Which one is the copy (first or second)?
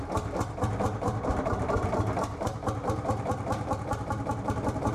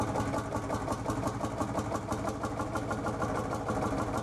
first